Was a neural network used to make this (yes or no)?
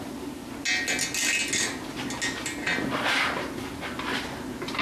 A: no